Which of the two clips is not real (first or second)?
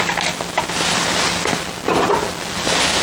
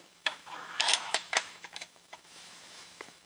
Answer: second